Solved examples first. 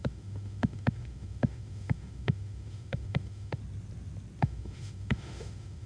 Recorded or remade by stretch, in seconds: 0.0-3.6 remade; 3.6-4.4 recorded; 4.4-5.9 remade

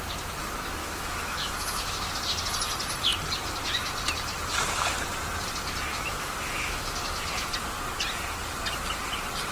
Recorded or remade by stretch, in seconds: 0.0-0.8 recorded; 0.8-2.1 remade; 2.1-5.9 recorded; 5.9-7.5 remade; 7.5-9.5 recorded

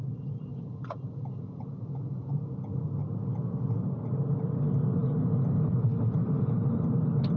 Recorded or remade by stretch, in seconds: 0.0-0.5 recorded; 0.5-2.3 remade; 2.3-7.4 recorded

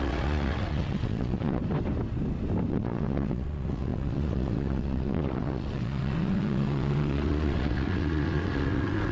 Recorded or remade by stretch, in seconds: 0.0-1.6 remade; 1.6-2.7 recorded; 2.7-9.1 remade